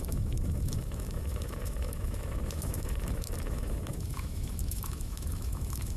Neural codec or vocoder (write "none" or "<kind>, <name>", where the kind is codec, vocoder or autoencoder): autoencoder, DAC-VAE